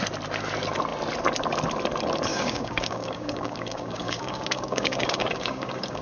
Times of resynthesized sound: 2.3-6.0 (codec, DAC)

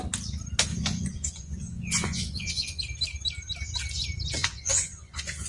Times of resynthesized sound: 0.7-2.8 (vocoder, Vocos); 4.4-5.5

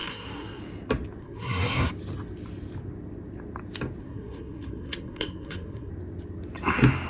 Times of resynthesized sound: 0.0-0.6 (codec, SNAC); 1.2-1.9; 4.0-5.9

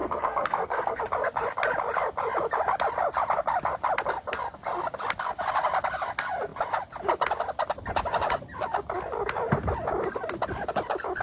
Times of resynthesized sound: 0.0-1.0 (codec, SNAC)

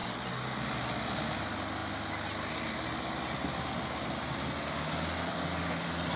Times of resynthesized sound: none

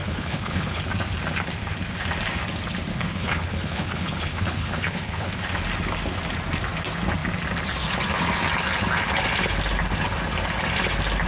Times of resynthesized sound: 0.0-0.8 (codec, HILCodec); 2.9-5.3

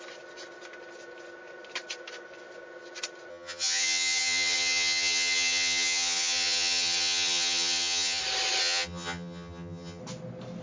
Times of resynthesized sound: 3.3-8.2 (vocoder, HiFi-GAN); 8.6-10.0